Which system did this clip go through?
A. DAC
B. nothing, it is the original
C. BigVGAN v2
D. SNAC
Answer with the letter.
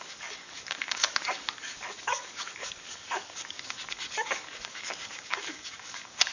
A